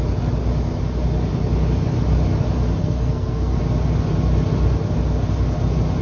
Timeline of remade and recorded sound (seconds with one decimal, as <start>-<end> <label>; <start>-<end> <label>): 0.0-2.8 recorded; 2.8-3.6 remade; 3.6-6.0 recorded